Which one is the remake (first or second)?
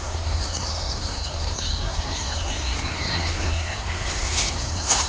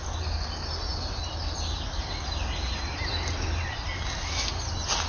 first